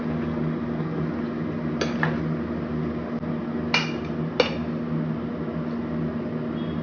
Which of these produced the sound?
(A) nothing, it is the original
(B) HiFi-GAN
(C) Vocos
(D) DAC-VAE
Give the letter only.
A